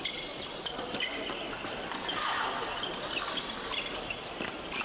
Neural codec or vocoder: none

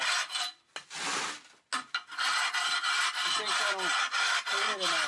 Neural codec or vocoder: none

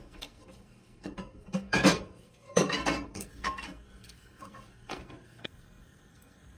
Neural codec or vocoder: codec, SNAC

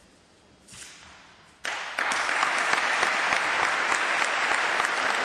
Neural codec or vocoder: none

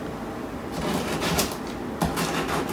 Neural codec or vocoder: none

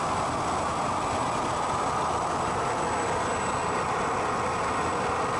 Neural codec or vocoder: none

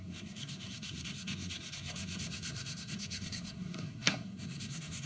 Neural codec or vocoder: codec, SNAC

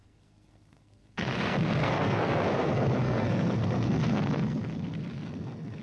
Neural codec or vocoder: codec, SNAC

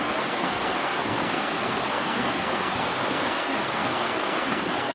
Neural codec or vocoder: codec, SNAC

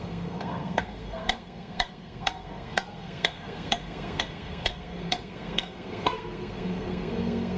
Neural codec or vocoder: codec, SNAC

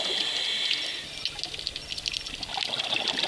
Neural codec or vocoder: none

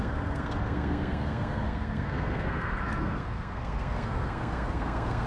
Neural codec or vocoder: codec, SNAC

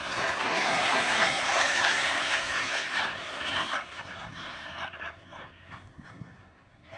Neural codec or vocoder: codec, SNAC